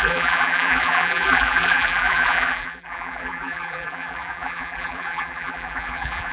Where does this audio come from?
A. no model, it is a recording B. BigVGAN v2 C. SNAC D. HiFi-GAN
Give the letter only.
B